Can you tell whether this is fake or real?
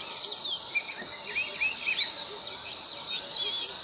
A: real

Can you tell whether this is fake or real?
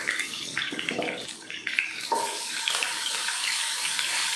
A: fake